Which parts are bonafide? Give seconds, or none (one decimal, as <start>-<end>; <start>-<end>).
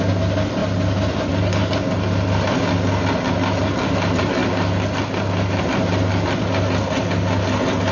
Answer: 0.0-7.9